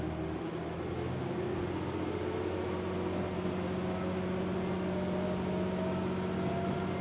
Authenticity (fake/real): real